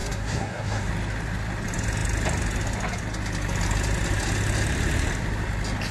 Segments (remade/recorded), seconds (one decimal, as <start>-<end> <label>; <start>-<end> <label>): 0.0-0.9 remade; 0.9-5.9 recorded